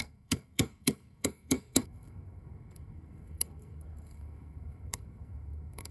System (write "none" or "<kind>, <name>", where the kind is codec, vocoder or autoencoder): codec, SNAC